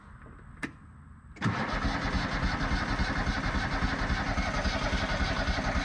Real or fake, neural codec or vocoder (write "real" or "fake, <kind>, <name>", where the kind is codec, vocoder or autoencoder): real